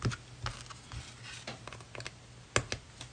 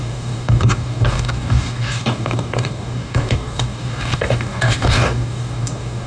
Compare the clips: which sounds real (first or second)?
first